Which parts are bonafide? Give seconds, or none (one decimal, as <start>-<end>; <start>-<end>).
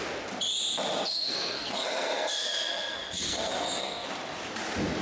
0.0-1.1; 4.1-5.0